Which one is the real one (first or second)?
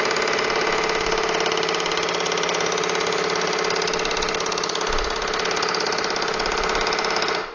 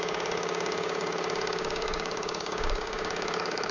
first